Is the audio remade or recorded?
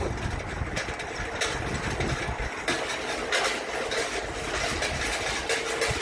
recorded